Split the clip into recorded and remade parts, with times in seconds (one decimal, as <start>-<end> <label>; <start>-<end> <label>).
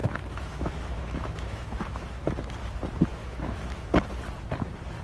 0.0-2.3 remade; 2.3-3.1 recorded; 3.1-3.9 remade; 3.9-5.0 recorded